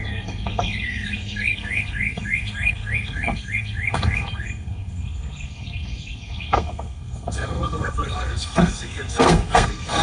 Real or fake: fake